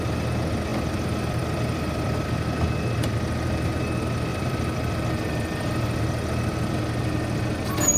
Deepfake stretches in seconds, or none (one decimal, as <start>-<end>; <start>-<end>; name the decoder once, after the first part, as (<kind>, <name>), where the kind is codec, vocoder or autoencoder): 0.7-2.3 (vocoder, BigVGAN v2); 4.3-6.0